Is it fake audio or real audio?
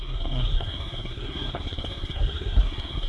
fake